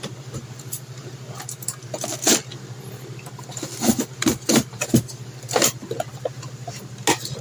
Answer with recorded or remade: recorded